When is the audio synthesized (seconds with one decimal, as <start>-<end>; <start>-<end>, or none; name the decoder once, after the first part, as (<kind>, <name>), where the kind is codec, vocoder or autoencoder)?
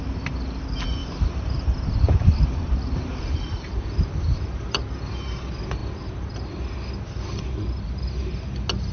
1.0-4.8 (vocoder, BigVGAN v2)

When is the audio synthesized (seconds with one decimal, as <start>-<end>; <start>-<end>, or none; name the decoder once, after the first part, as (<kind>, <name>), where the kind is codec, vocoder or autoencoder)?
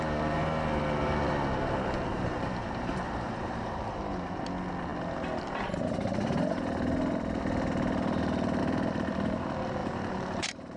2.1-4.4 (vocoder, BigVGAN v2); 9.8-10.8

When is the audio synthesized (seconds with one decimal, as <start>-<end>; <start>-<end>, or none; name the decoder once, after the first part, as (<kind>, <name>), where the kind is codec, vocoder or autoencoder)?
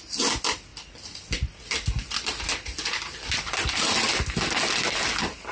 0.7-4.0 (vocoder, BigVGAN v2)